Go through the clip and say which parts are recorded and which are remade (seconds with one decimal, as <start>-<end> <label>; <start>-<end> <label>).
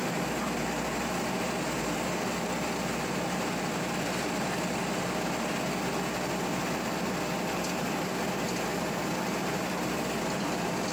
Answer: 0.0-10.9 recorded